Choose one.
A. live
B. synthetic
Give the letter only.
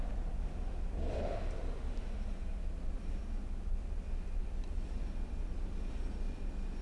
A